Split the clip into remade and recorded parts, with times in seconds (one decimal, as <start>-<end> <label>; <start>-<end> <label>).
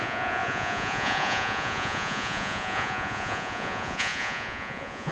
0.0-5.1 remade